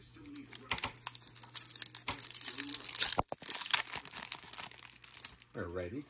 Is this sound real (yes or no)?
yes